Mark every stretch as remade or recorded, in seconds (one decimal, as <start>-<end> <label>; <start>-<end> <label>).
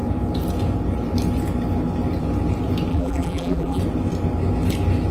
0.0-2.9 recorded; 2.9-3.8 remade; 3.8-5.1 recorded